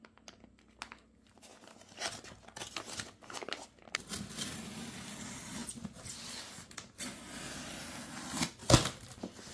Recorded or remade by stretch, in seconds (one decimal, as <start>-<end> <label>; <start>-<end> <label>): 0.0-9.5 recorded